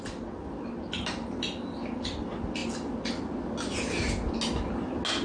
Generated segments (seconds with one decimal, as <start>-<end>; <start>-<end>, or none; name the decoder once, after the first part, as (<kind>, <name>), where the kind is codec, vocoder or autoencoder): none